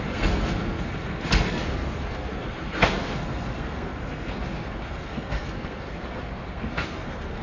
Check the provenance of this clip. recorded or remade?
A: remade